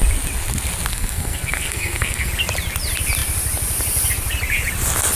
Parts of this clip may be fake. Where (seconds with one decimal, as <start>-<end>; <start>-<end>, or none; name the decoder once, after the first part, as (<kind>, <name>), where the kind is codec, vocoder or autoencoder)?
0.9-2.3 (codec, SNAC)